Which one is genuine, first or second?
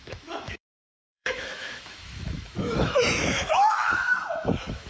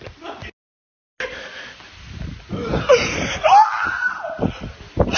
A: second